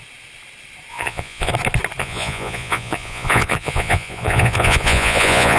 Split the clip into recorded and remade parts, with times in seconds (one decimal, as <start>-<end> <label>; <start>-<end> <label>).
0.0-0.9 recorded; 0.9-1.5 remade; 1.5-2.0 recorded; 2.0-5.6 remade